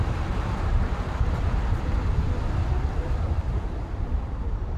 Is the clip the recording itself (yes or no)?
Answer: no